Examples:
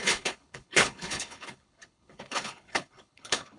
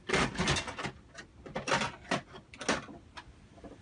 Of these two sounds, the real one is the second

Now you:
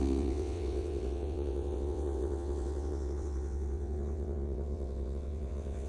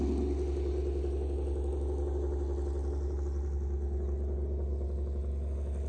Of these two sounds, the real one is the second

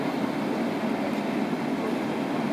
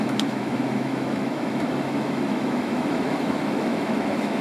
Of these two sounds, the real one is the first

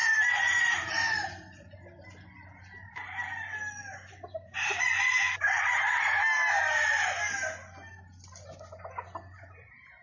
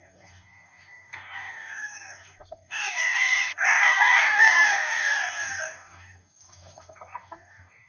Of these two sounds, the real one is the first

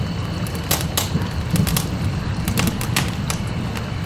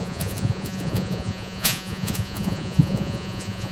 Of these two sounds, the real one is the first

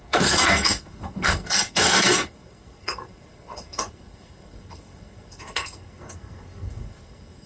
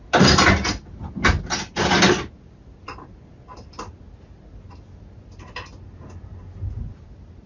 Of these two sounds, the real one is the second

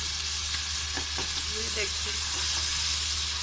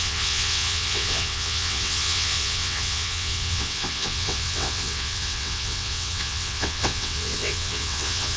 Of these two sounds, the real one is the first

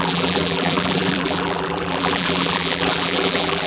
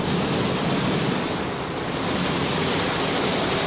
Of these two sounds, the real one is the second